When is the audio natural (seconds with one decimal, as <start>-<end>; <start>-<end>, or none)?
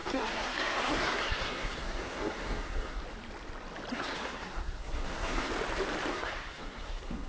3.0-3.9; 5.5-6.1